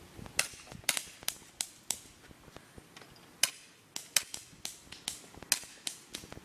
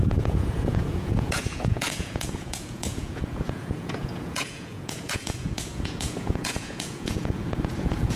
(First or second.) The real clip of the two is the first